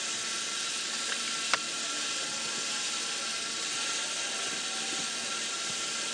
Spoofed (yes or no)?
no